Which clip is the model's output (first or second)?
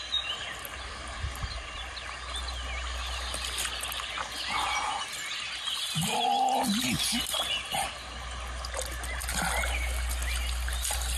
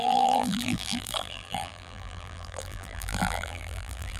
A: second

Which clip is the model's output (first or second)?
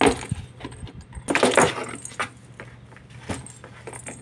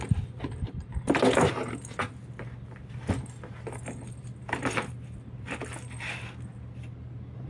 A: second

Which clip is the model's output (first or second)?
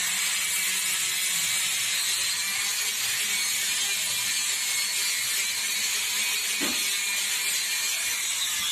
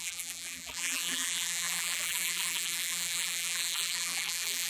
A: second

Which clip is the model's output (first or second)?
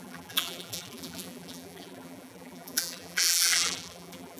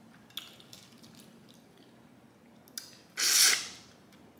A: first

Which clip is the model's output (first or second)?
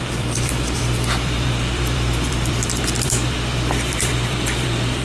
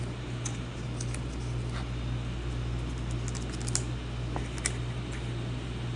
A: first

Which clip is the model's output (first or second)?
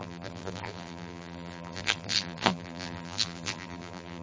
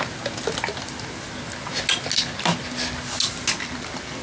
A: first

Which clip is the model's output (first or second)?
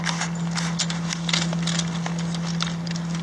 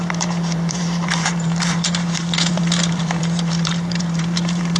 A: second